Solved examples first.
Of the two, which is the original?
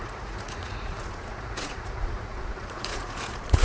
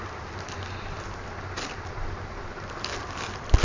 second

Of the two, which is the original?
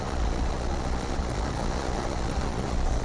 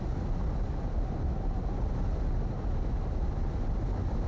second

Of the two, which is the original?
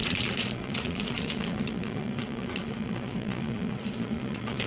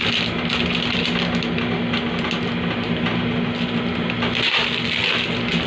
second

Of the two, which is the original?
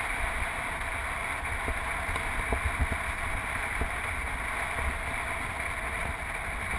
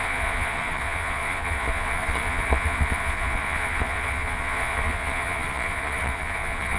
first